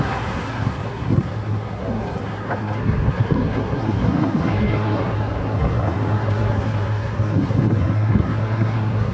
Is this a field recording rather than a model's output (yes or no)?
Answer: no